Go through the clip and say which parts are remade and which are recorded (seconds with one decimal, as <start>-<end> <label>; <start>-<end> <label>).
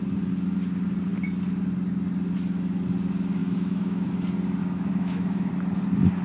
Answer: 0.0-3.4 recorded; 3.4-4.1 remade; 4.1-4.6 recorded; 4.6-5.5 remade; 5.5-6.2 recorded